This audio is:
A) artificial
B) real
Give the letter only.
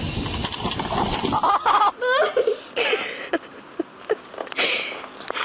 B